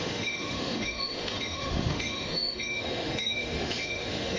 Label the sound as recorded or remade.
remade